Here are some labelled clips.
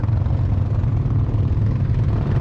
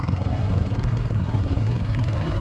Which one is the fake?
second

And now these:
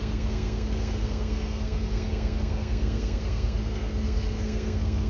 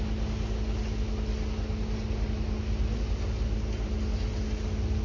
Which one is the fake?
first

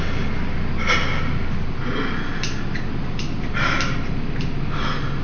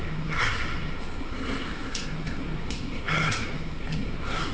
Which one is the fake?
second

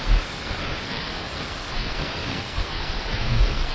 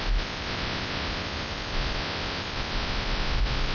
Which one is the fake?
first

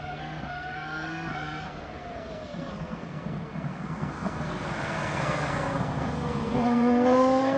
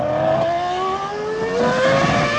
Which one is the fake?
first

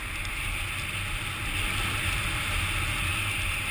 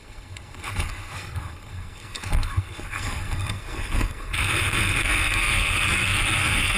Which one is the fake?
second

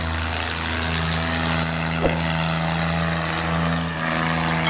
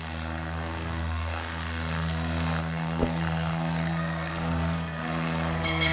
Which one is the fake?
second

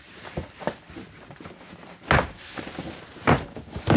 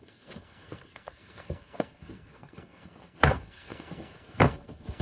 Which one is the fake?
second